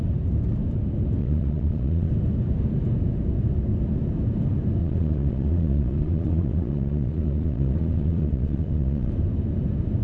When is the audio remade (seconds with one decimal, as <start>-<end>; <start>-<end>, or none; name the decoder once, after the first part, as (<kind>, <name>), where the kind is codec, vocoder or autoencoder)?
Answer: 1.2-2.1 (vocoder, Vocos); 4.8-9.1